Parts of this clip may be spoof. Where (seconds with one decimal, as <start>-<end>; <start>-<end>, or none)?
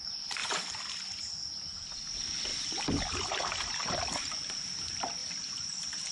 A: 0.4-1.2; 2.5-4.2; 5.2-6.1